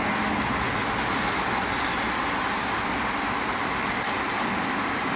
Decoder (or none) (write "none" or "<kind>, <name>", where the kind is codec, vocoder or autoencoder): none